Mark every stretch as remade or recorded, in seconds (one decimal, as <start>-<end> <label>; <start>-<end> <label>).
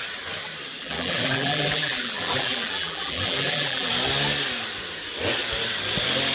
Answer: 0.0-0.8 recorded; 0.8-3.9 remade; 3.9-6.3 recorded